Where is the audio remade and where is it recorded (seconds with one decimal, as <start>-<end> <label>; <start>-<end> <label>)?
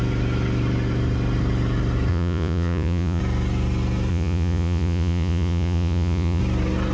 0.0-2.1 recorded; 2.1-3.2 remade; 3.2-4.1 recorded; 4.1-6.4 remade; 6.4-6.9 recorded